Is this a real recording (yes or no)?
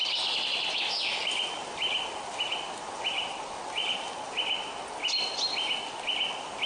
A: yes